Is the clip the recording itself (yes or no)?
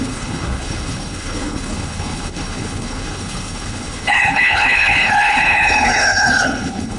no